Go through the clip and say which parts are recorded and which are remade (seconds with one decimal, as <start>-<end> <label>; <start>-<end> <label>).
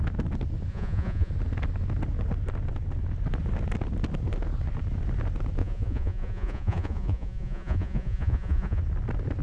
0.0-0.7 recorded; 0.7-1.3 remade; 1.3-5.6 recorded; 5.6-8.8 remade; 8.8-9.4 recorded